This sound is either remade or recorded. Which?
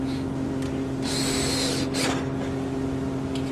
recorded